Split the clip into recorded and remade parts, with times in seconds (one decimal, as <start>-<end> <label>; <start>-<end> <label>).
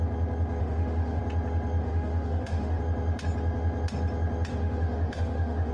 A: 0.0-0.6 recorded; 0.6-1.2 remade; 1.2-1.8 recorded; 1.8-2.8 remade; 2.8-4.5 recorded; 4.5-5.7 remade